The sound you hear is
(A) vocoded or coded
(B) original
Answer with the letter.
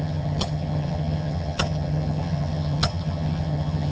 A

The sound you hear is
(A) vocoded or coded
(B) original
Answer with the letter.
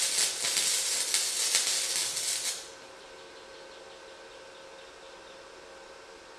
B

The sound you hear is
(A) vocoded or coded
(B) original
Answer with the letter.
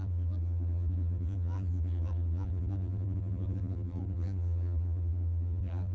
A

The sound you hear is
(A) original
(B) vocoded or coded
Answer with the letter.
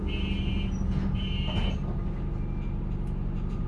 A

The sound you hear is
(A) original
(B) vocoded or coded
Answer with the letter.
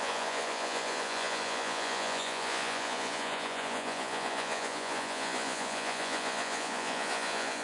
B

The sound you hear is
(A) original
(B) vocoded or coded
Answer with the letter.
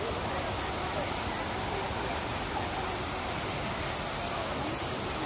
A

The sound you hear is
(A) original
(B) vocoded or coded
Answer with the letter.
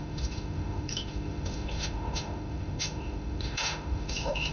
B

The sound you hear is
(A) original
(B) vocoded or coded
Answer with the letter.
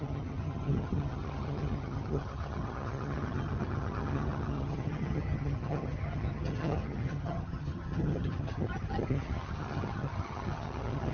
B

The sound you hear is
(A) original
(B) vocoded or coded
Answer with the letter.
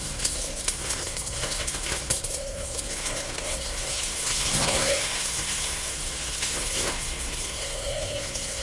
B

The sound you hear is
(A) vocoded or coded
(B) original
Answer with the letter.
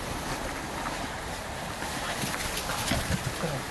B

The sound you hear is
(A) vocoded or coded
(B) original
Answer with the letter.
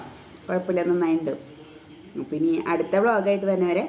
B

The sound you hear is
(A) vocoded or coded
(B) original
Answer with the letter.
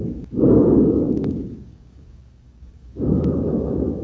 A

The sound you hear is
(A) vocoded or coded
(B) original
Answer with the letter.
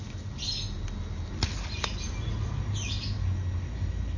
B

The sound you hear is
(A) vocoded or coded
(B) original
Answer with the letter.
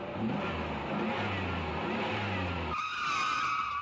B